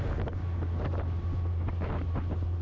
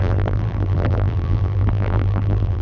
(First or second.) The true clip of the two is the first